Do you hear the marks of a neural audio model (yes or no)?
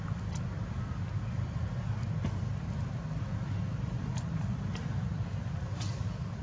no